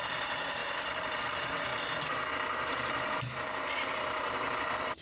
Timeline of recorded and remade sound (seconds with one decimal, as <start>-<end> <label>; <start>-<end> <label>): 0.0-1.7 remade; 1.7-2.3 recorded; 2.3-5.0 remade